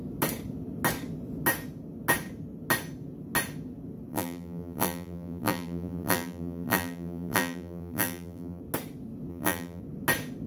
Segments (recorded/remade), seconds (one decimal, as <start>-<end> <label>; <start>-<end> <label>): 0.0-4.1 recorded; 4.1-8.6 remade; 8.6-9.3 recorded; 9.3-9.8 remade; 9.8-10.5 recorded